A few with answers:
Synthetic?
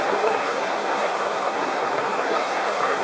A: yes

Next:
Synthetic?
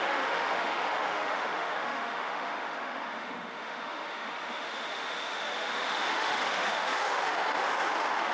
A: yes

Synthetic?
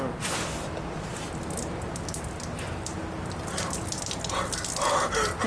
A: no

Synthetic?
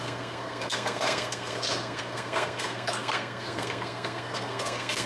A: yes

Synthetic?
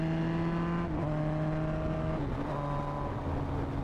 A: no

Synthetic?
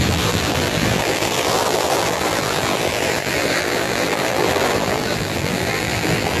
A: yes